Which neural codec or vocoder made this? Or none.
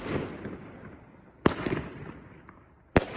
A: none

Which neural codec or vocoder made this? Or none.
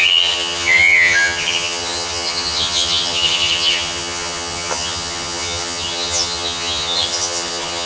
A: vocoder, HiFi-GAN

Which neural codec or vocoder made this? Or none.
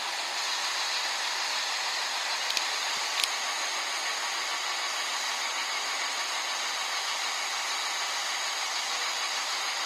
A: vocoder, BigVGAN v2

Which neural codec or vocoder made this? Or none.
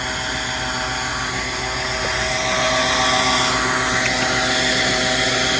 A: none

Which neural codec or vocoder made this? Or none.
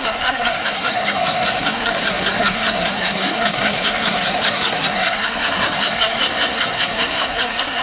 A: codec, SNAC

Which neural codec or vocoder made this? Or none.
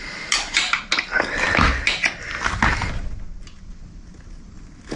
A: none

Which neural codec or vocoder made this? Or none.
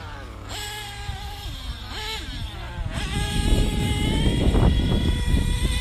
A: none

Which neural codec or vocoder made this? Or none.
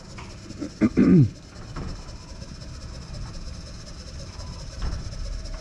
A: none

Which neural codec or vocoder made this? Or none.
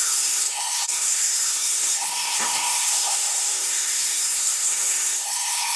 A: codec, SNAC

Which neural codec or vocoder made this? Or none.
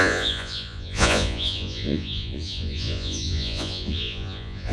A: vocoder, Vocos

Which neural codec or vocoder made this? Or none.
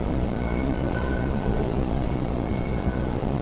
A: vocoder, Vocos